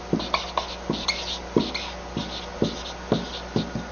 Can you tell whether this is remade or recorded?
recorded